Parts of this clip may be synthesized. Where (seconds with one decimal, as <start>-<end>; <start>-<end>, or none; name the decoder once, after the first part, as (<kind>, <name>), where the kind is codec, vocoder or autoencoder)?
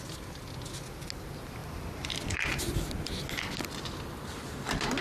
1.6-2.1 (vocoder, BigVGAN v2)